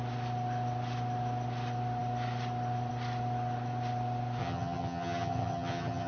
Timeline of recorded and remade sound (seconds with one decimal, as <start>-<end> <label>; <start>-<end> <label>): 0.0-4.4 recorded; 4.4-6.1 remade